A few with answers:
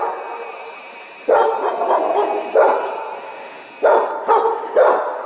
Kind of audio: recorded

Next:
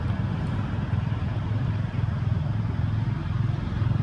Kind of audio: recorded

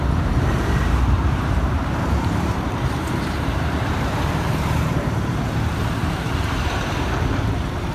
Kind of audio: remade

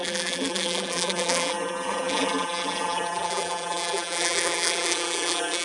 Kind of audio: remade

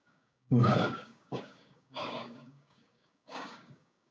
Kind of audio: remade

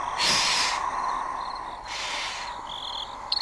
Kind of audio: recorded